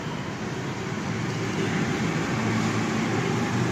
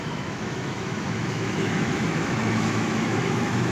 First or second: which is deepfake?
second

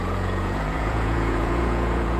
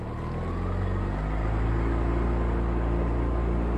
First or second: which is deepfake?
first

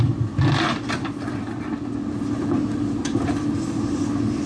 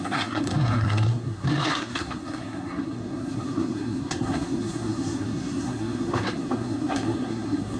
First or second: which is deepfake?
second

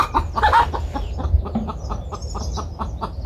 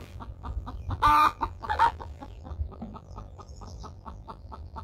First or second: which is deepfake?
second